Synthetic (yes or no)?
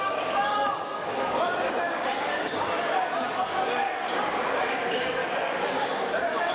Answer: yes